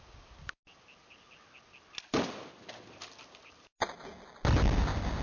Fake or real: real